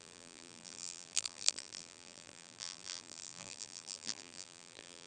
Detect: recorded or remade remade